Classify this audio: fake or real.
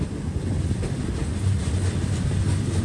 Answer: real